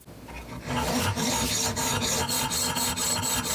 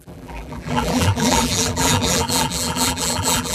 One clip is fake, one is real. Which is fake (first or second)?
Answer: second